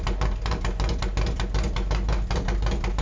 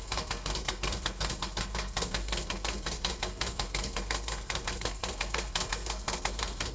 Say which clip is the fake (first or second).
second